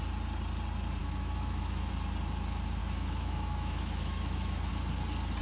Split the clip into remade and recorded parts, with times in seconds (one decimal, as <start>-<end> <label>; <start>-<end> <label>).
0.0-1.0 recorded; 1.0-1.9 remade; 1.9-2.8 recorded; 2.8-4.7 remade; 4.7-5.4 recorded